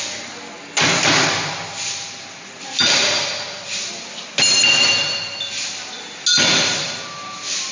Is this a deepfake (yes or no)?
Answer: no